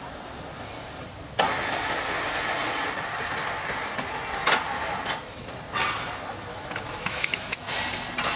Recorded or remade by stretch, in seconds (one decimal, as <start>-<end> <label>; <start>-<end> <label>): 0.0-6.5 recorded; 6.5-7.7 remade; 7.7-8.4 recorded